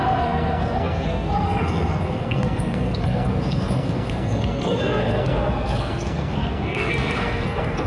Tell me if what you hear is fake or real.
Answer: fake